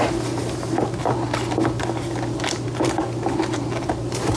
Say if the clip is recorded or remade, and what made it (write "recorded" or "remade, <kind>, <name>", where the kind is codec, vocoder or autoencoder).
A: recorded